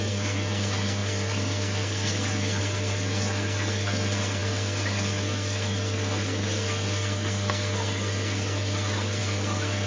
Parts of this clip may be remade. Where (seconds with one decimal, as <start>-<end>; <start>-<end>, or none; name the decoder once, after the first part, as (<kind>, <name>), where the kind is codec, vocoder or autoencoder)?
0.0-9.9 (codec, SNAC)